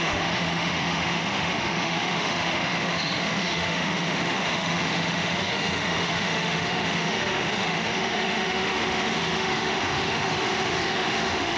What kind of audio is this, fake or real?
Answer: fake